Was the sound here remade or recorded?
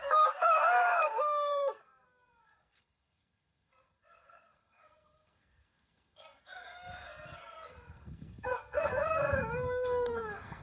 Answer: remade